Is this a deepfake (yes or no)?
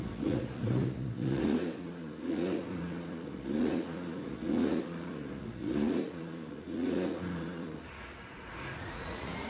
yes